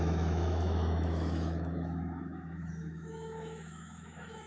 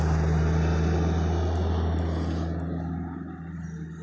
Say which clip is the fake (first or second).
first